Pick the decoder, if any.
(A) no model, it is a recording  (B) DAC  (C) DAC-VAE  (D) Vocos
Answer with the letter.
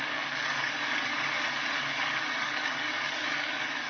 B